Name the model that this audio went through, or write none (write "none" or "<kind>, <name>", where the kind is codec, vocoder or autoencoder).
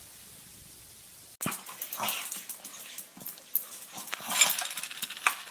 none